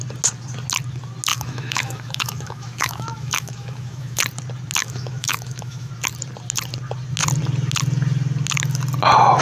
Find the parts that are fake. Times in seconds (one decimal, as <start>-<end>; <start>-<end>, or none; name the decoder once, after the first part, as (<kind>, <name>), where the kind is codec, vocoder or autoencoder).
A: 1.3-4.2 (autoencoder, DAC-VAE); 4.8-5.9